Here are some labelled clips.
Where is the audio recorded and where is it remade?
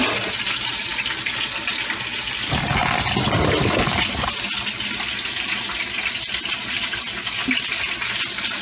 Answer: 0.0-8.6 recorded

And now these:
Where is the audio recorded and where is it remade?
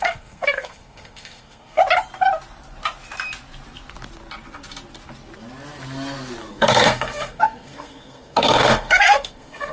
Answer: 0.0-1.8 remade; 1.8-6.5 recorded; 6.5-9.7 remade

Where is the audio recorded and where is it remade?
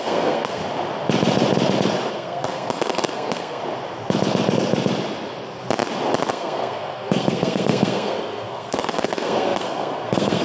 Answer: 0.0-0.6 remade; 0.6-2.1 recorded; 2.1-3.6 remade; 3.6-6.3 recorded; 6.3-10.4 remade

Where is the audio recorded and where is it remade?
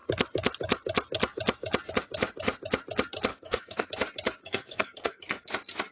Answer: 0.0-3.3 recorded; 3.3-3.9 remade; 3.9-4.4 recorded; 4.4-5.5 remade; 5.5-5.9 recorded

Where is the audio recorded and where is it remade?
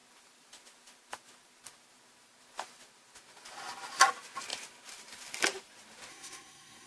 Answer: 0.0-6.1 recorded; 6.1-6.9 remade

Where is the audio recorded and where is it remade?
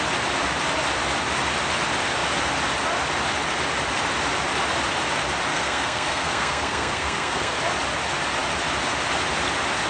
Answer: 0.0-5.5 recorded; 5.5-7.6 remade; 7.6-9.9 recorded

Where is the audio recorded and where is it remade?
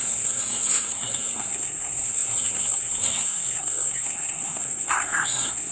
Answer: 0.0-5.7 remade